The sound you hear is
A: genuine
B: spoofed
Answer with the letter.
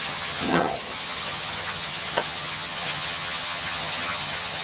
B